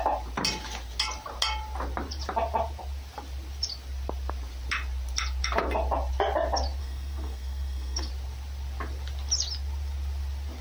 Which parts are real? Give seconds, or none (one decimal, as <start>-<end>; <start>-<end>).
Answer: 0.0-6.8; 8.1-10.6